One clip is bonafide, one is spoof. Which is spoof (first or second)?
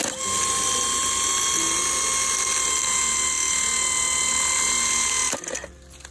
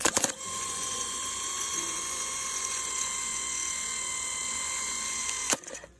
second